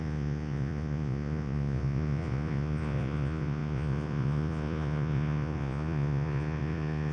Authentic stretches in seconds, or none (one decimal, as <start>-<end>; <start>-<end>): none